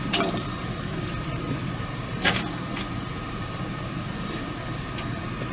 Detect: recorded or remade remade